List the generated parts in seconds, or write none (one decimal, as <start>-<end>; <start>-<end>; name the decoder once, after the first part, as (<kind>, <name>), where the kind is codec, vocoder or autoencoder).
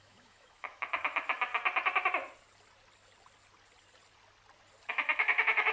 0.0-1.5 (autoencoder, DAC-VAE); 4.9-5.7